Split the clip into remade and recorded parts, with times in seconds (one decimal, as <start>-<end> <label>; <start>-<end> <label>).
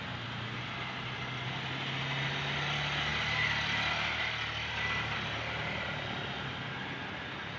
0.0-7.6 recorded